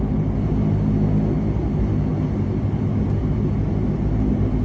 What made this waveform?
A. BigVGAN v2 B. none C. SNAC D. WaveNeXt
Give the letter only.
B